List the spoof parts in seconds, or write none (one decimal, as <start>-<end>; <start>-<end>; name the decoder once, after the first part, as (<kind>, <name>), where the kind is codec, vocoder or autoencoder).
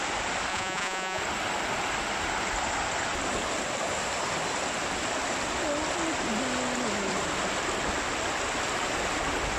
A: 0.5-1.2 (vocoder, Vocos)